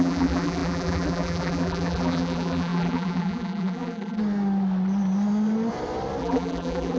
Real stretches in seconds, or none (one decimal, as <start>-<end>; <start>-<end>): 4.2-6.2